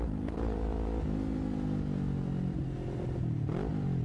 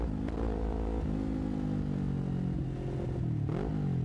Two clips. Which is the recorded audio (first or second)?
second